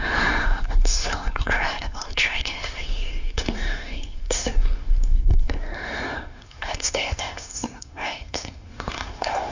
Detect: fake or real fake